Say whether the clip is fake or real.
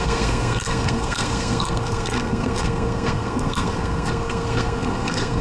fake